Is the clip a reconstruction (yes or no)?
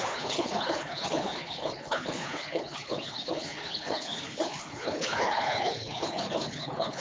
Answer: yes